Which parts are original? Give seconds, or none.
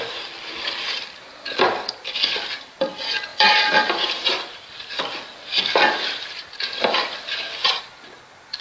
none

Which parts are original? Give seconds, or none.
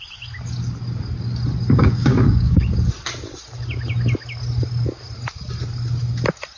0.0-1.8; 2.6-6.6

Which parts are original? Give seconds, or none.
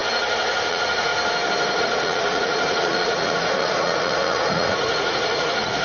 0.0-0.7; 1.1-1.8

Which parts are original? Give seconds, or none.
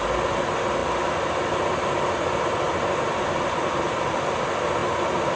0.0-5.4